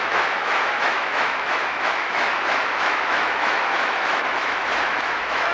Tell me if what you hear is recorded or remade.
remade